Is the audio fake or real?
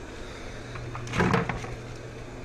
real